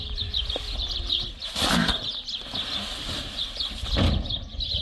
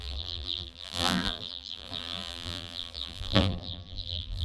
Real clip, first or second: first